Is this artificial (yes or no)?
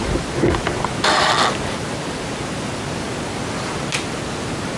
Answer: no